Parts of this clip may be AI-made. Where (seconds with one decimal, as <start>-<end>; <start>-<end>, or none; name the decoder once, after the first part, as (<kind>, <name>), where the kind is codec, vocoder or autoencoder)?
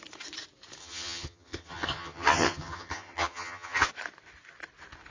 0.8-3.9 (vocoder, HiFi-GAN)